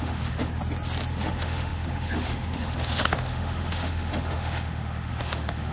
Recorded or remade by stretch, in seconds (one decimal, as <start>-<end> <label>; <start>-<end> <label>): 0.0-0.5 remade; 0.5-1.1 recorded; 1.1-5.7 remade